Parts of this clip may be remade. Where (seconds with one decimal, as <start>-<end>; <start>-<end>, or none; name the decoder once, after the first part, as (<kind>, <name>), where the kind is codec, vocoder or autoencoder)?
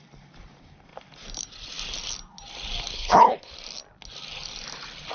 2.9-3.5 (codec, HILCodec)